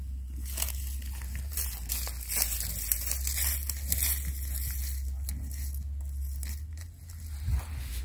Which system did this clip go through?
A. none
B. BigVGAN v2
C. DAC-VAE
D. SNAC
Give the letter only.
A